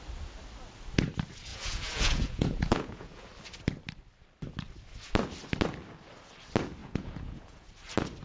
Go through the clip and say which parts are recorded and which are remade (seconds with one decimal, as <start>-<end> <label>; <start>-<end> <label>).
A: 0.0-1.5 recorded; 1.5-3.2 remade; 3.2-6.8 recorded; 6.8-7.7 remade; 7.7-8.2 recorded